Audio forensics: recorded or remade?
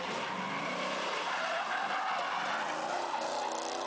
recorded